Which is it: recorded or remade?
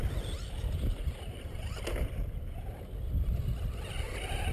recorded